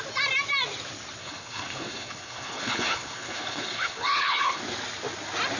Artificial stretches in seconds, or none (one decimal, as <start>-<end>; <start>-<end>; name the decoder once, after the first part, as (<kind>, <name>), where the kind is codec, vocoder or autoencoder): 1.2-4.6 (codec, HILCodec)

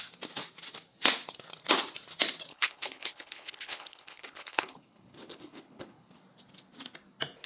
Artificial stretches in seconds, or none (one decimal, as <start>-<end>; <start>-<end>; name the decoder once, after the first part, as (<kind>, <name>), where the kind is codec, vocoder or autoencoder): 2.5-6.2 (codec, HILCodec)

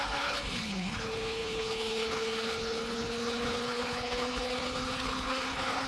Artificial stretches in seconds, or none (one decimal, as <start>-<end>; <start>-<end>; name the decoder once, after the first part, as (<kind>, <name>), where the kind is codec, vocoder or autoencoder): 0.0-5.9 (codec, HILCodec)

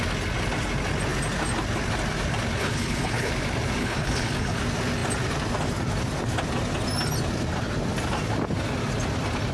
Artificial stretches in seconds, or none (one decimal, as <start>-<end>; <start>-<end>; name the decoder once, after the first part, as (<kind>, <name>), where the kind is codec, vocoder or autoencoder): 2.6-3.3 (codec, HILCodec); 3.8-4.6

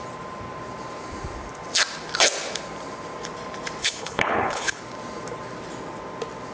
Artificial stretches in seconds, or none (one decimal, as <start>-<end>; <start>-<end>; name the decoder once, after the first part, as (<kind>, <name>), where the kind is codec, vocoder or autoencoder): 3.8-4.8 (codec, HILCodec)

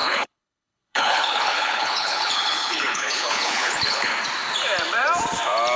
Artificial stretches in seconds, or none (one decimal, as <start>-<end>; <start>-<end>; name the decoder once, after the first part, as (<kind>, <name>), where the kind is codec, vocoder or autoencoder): 0.0-4.1 (codec, HILCodec)